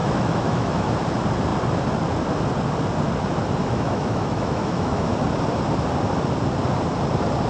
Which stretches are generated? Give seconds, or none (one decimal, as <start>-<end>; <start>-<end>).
0.0-0.9; 3.6-5.2